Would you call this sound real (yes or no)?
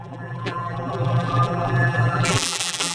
no